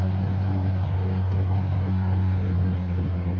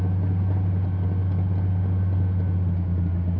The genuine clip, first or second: second